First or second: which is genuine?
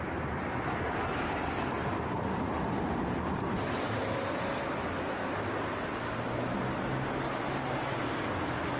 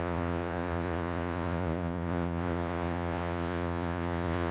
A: first